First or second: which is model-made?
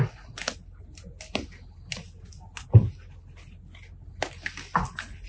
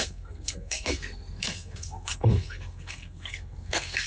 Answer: second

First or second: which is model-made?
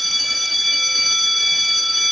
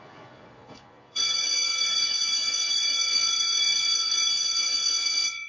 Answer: second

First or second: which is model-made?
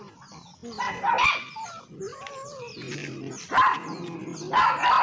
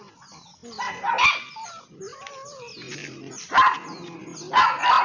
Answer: first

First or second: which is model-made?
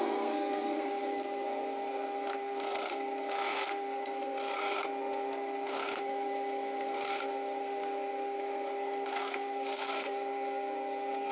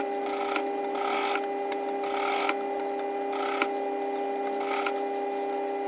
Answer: first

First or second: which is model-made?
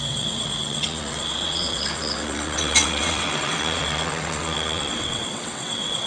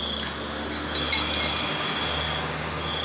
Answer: first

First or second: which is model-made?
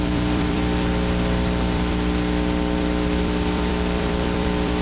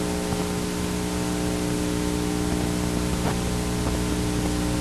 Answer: first